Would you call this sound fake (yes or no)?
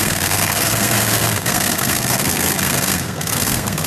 yes